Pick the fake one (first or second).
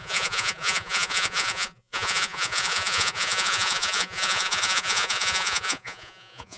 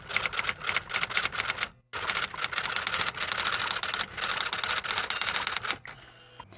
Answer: first